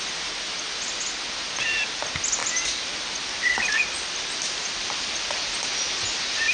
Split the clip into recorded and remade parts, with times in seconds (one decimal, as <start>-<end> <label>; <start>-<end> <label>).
0.0-2.4 recorded; 2.4-5.3 remade; 5.3-6.5 recorded